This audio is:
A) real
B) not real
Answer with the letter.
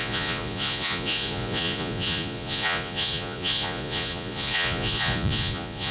B